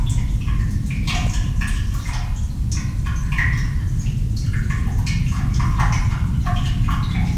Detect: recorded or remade recorded